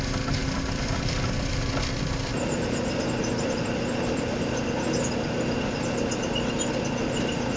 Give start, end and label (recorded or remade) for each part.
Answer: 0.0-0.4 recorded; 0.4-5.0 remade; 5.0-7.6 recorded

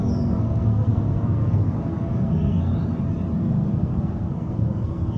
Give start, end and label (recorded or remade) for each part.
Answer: 0.0-2.7 remade; 2.7-3.4 recorded; 3.4-5.2 remade

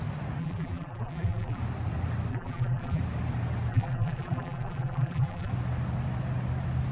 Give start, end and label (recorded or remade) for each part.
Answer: 0.0-0.4 recorded; 0.4-1.6 remade; 1.6-2.3 recorded; 2.3-3.0 remade; 3.0-3.7 recorded; 3.7-5.5 remade; 5.5-6.9 recorded

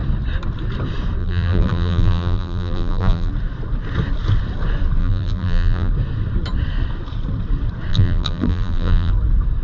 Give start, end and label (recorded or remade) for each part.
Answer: 0.0-1.2 recorded; 1.2-3.3 remade; 3.3-5.0 recorded; 5.0-5.9 remade; 5.9-7.9 recorded; 7.9-9.1 remade; 9.1-9.6 recorded

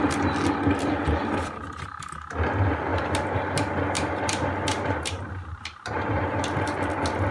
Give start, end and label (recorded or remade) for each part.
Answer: 0.0-2.9 recorded; 2.9-6.4 remade; 6.4-7.3 recorded

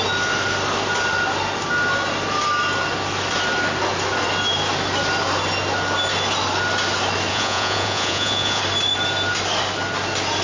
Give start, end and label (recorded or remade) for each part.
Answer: 0.0-7.3 recorded; 7.3-8.6 remade; 8.6-10.4 recorded